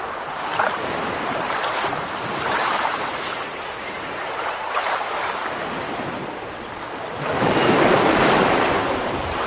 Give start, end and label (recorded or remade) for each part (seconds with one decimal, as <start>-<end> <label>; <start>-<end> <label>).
0.0-5.4 remade; 5.4-7.0 recorded; 7.0-9.5 remade